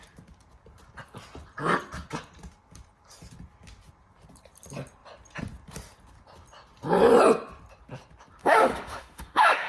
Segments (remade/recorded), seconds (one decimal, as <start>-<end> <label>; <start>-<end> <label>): 0.0-8.4 recorded; 8.4-9.7 remade

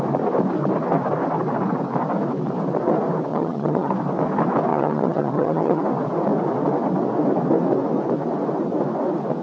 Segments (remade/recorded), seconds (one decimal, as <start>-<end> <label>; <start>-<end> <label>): 0.0-3.3 recorded; 3.3-3.9 remade; 3.9-4.7 recorded; 4.7-5.8 remade; 5.8-9.4 recorded

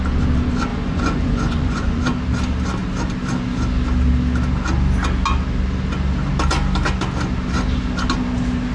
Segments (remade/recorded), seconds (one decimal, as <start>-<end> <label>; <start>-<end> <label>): 0.0-0.7 recorded; 0.7-2.0 remade; 2.0-8.7 recorded

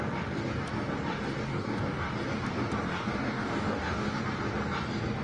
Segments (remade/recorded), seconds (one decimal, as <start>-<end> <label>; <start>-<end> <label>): 0.0-1.5 recorded; 1.5-2.1 remade; 2.1-2.9 recorded; 2.9-4.2 remade; 4.2-5.2 recorded

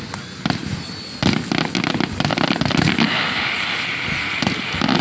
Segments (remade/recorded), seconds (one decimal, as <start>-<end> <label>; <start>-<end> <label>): 0.0-5.0 recorded

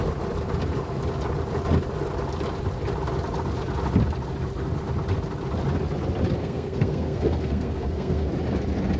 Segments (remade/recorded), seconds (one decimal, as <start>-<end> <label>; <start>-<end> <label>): 0.0-6.4 recorded; 6.4-8.3 remade; 8.3-9.0 recorded

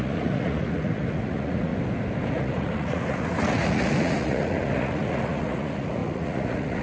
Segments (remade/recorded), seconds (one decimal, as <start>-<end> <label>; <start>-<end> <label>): 0.0-1.7 remade; 1.7-2.3 recorded; 2.3-6.8 remade